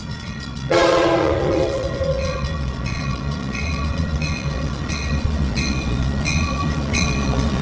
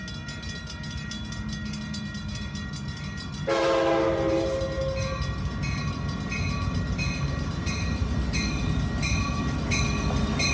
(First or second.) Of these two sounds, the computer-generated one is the first